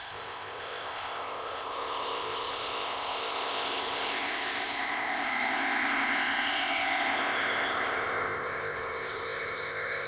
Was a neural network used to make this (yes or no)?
yes